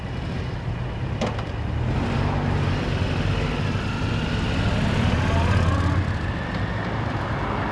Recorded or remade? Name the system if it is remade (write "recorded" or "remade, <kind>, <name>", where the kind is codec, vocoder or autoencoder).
recorded